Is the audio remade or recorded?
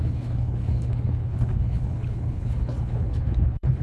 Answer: remade